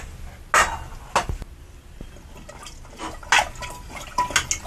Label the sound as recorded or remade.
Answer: recorded